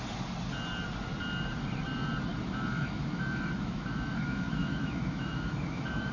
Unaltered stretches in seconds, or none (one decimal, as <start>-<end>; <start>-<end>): 0.0-2.3

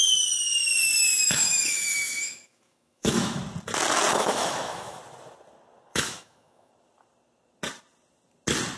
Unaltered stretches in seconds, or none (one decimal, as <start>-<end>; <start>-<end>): 0.0-1.2; 3.4-4.1; 5.0-5.9; 6.7-8.8

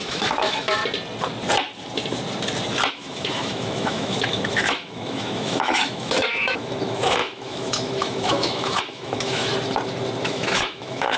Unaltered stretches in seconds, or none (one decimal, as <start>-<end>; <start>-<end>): 0.8-2.9; 9.5-10.2

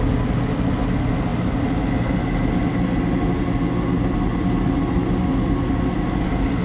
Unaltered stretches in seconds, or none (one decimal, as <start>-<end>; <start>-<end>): 0.0-6.6

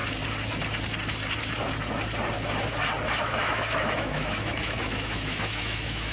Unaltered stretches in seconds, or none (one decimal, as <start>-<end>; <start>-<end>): 0.0-3.2

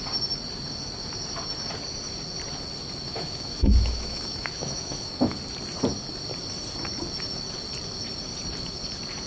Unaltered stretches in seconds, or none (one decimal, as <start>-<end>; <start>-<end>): 0.0-3.1; 5.4-9.3

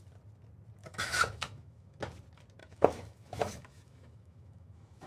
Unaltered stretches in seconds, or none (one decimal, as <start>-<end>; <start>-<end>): 0.0-0.8; 2.0-2.6